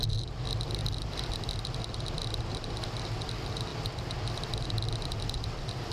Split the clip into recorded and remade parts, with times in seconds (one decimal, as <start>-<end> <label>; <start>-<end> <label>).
0.0-5.9 recorded